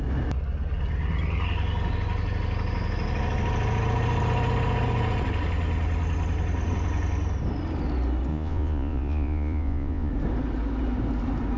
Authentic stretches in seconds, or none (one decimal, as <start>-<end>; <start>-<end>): 0.0-8.3; 10.1-11.6